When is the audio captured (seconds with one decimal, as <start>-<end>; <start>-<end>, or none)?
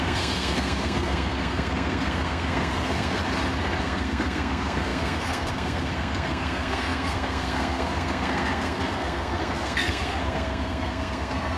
3.2-3.8